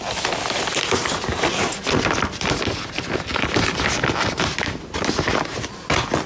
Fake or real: real